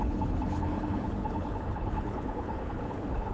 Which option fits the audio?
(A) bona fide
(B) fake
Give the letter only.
B